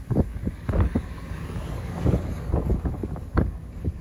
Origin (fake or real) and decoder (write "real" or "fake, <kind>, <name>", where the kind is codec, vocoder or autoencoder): fake, codec, DAC